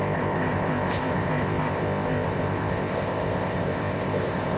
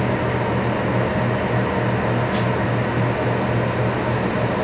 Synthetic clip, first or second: first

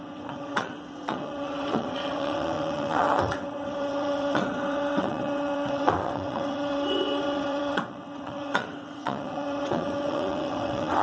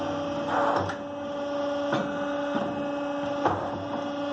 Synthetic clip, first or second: first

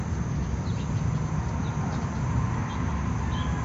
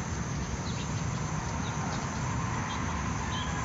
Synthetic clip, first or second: second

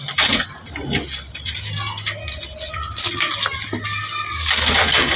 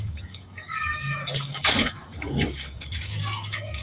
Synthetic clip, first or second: second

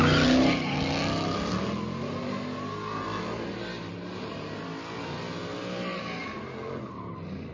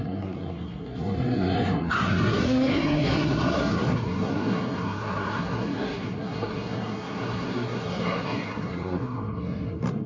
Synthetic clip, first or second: second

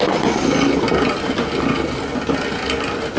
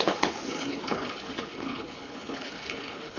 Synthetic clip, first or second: second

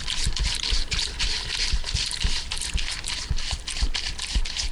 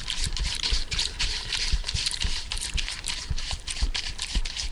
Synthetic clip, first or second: second